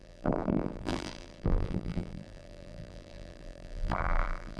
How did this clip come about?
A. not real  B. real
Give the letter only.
A